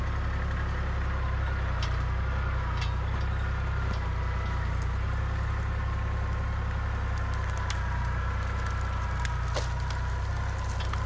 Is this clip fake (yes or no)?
no